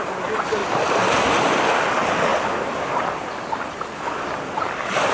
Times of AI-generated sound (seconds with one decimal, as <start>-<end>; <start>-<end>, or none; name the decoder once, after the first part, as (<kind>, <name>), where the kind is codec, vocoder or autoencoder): none